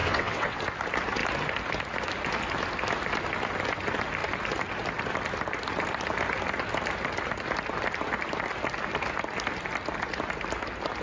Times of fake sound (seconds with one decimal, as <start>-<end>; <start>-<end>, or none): 0.0-0.6